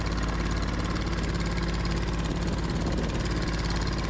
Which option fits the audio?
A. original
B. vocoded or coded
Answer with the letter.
A